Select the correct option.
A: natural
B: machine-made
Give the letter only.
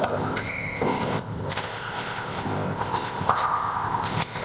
B